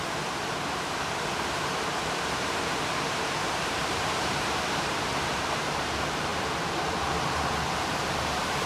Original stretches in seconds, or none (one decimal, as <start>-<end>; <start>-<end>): none